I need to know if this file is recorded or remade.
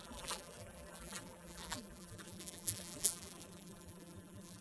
remade